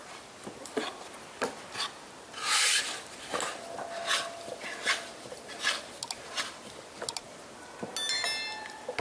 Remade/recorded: recorded